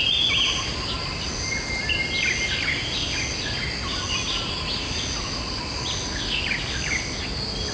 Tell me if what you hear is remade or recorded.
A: recorded